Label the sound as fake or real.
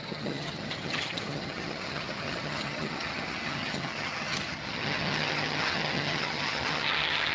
fake